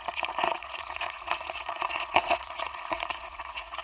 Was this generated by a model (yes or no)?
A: yes